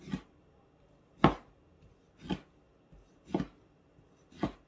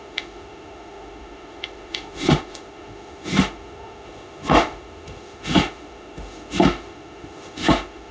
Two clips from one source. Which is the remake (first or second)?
second